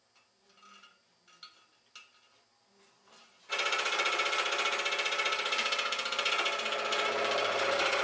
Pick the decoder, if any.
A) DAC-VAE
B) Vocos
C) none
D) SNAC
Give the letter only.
C